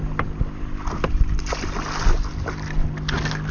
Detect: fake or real real